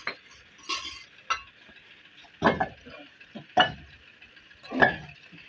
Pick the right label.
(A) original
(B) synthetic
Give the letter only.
A